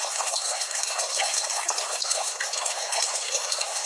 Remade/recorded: remade